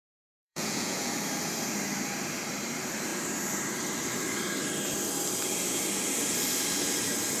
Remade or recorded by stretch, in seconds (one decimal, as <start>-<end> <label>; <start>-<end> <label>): 0.0-1.1 remade; 1.1-7.4 recorded